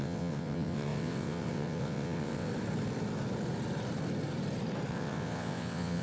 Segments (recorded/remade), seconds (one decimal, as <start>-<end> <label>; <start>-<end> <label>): 0.0-2.5 remade; 2.5-4.9 recorded; 4.9-6.0 remade